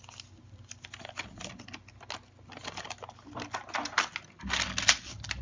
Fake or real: real